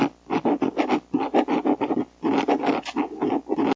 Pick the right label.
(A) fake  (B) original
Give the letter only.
B